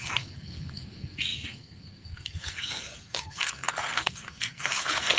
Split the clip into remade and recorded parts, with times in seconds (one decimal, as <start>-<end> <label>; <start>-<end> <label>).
0.0-5.2 remade